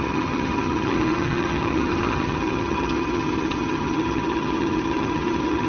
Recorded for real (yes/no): no